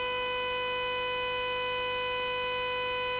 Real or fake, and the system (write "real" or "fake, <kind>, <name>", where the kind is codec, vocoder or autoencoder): real